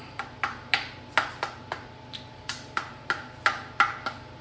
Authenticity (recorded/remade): recorded